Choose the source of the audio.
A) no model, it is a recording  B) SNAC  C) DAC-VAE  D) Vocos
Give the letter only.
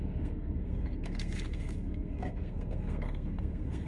B